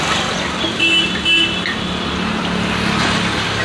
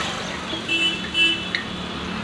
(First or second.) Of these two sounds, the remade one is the first